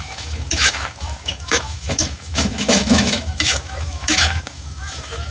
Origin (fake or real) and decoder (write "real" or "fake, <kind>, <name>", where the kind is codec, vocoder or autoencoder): fake, autoencoder, DAC-VAE